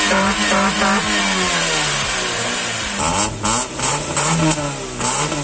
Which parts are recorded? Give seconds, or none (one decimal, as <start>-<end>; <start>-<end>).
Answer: 0.0-5.4